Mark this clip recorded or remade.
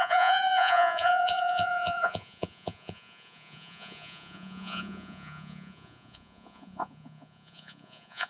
remade